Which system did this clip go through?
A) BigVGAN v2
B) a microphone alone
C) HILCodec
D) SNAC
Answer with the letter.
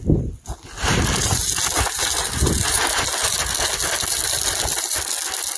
B